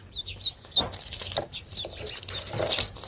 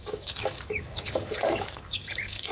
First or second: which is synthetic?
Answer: second